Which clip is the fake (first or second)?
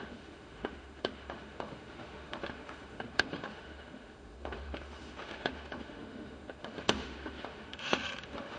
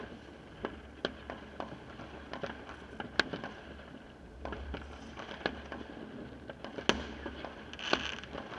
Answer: first